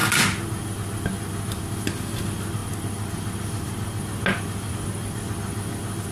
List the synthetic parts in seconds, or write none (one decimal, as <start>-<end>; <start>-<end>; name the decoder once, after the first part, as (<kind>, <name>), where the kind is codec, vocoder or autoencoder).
none